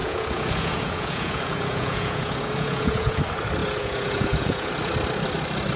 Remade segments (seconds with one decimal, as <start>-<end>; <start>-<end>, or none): 0.0-3.2; 3.6-4.7